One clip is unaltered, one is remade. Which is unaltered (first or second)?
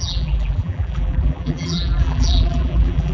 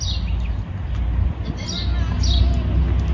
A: second